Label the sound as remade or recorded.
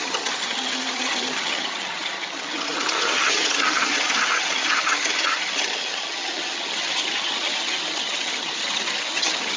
remade